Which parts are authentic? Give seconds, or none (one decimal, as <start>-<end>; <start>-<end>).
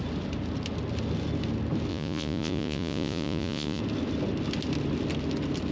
0.0-1.9; 3.8-5.7